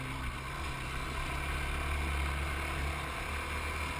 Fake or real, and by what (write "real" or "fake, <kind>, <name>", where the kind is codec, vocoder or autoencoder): real